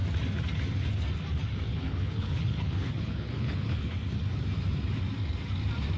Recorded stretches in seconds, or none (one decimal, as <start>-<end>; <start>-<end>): 0.0-1.7; 3.9-6.0